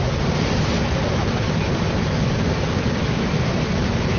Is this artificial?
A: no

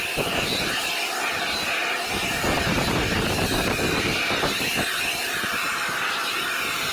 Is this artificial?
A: no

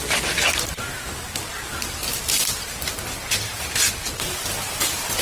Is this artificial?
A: no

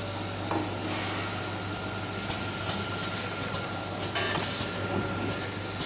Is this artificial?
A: no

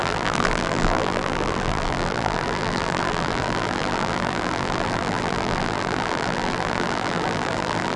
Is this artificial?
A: yes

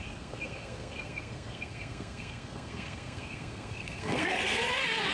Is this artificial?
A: yes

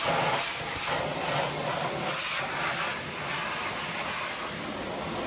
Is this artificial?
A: no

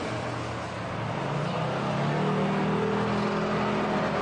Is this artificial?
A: no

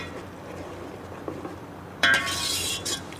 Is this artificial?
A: yes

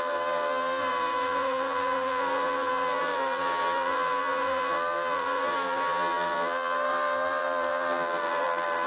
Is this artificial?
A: yes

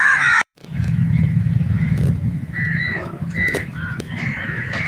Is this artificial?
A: yes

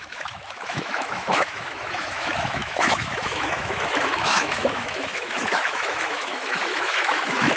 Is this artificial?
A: yes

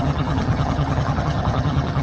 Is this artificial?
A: yes